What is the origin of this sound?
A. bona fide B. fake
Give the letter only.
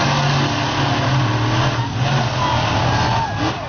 A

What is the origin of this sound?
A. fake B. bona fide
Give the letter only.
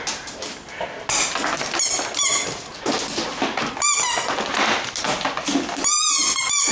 B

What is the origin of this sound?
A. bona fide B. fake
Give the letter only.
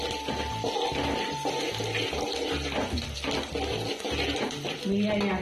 A